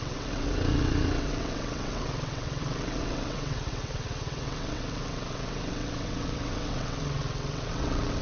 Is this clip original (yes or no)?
no